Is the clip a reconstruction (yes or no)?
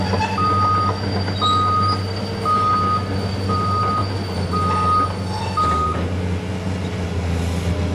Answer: no